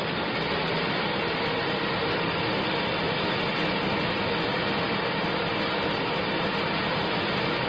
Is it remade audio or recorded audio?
recorded